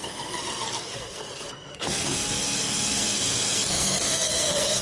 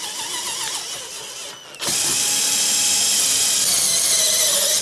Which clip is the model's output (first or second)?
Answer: first